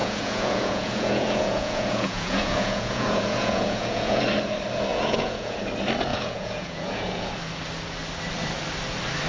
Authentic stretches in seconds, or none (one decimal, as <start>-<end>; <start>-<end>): 4.2-4.9; 5.6-6.1; 7.3-9.3